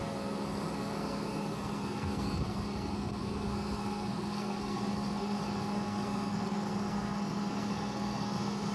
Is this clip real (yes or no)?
no